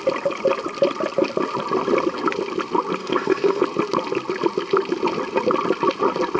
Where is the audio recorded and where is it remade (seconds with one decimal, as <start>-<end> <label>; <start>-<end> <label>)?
0.0-3.0 recorded; 3.0-3.6 remade; 3.6-6.4 recorded